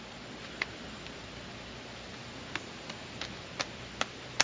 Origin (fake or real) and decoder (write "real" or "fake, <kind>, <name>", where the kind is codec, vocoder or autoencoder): real